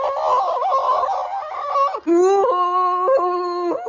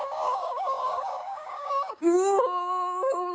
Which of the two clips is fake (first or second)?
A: second